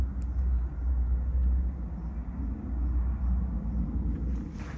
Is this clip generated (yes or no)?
no